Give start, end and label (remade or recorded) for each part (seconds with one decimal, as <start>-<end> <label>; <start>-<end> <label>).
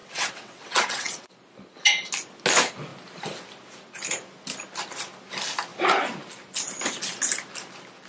0.0-1.3 remade; 1.3-8.1 recorded